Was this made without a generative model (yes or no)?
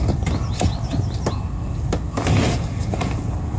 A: yes